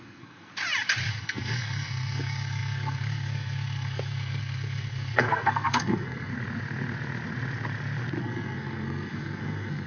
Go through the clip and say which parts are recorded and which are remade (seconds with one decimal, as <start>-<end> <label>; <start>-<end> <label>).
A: 0.0-0.5 remade; 0.5-1.1 recorded; 1.1-6.3 remade; 6.3-8.2 recorded; 8.2-9.9 remade